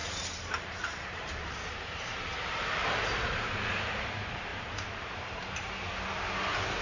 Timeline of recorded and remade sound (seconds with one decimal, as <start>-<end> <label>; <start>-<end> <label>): 0.0-4.1 remade; 4.1-4.5 recorded; 4.5-5.7 remade; 5.7-6.8 recorded